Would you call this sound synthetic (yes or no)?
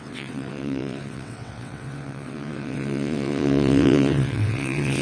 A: yes